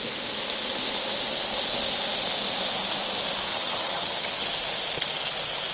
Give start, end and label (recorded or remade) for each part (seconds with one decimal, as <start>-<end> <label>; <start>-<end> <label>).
0.0-3.5 recorded; 3.5-4.5 remade; 4.5-5.7 recorded